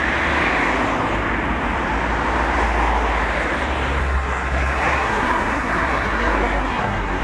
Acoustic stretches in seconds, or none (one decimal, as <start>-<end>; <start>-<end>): 0.0-4.0